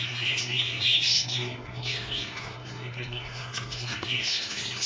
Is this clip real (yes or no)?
no